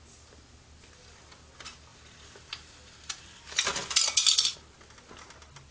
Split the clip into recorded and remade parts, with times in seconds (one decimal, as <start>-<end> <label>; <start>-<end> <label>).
0.0-5.7 recorded